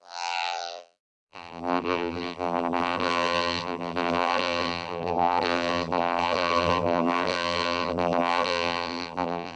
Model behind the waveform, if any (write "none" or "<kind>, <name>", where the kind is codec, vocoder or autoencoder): vocoder, BigVGAN v2